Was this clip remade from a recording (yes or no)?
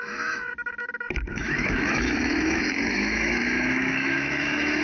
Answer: yes